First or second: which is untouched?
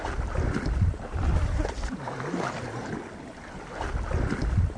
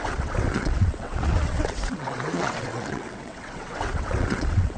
first